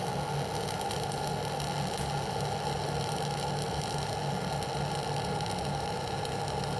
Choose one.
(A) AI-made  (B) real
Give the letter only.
B